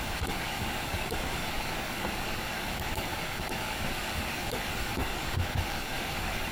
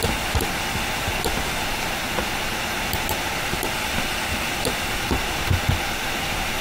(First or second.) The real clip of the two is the second